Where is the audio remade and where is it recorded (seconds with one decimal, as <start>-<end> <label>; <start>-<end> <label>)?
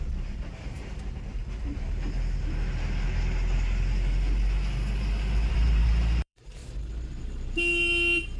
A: 0.0-1.4 remade; 1.4-5.5 recorded; 5.5-6.6 remade; 6.6-7.2 recorded; 7.2-8.4 remade